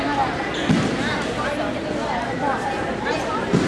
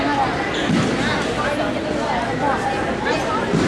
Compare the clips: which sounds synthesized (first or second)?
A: first